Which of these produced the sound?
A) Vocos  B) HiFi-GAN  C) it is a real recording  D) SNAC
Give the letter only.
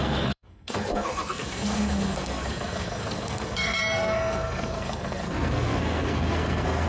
D